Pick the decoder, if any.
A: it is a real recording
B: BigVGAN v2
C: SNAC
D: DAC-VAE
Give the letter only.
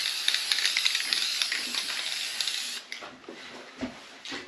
A